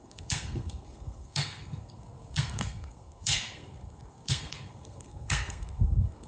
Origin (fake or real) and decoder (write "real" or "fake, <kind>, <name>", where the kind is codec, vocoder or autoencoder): fake, codec, SNAC